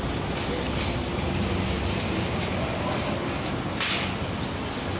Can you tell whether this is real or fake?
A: real